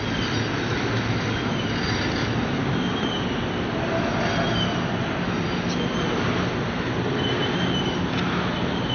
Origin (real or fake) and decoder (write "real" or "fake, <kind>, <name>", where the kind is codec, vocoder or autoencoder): real